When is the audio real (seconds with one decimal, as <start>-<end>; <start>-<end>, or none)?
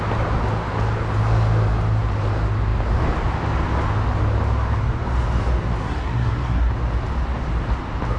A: 0.0-5.8; 6.7-8.2